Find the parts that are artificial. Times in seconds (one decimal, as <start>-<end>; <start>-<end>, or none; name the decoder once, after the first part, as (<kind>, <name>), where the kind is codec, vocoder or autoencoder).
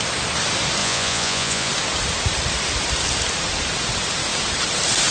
0.8-1.7 (vocoder, Vocos)